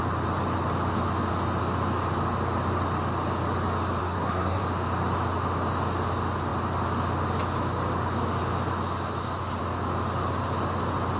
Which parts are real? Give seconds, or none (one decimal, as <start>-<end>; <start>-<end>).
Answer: 0.0-4.0; 4.6-11.2